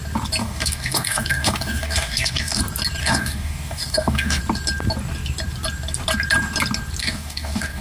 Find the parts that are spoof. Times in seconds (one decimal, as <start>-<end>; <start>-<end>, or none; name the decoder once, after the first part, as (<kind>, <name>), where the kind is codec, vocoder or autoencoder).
0.4-2.6 (codec, DAC); 3.0-4.4; 7.0-7.8